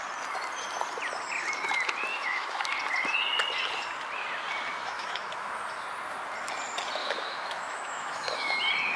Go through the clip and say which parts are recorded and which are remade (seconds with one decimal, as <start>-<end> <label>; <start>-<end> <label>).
0.0-2.1 recorded; 2.1-2.7 remade; 2.7-4.7 recorded; 4.7-5.5 remade; 5.5-7.0 recorded; 7.0-8.6 remade; 8.6-9.0 recorded